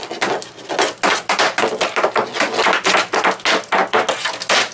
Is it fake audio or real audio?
real